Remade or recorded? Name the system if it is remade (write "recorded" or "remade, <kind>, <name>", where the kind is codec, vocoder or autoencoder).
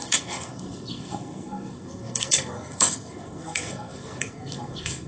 remade, codec, SNAC